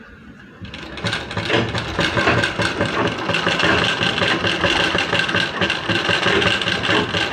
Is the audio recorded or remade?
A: recorded